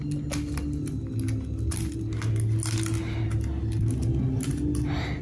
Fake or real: real